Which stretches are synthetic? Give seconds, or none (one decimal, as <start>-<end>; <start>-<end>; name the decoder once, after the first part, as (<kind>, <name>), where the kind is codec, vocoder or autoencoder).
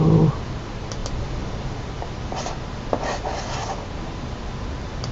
none